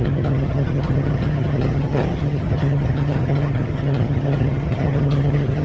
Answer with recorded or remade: remade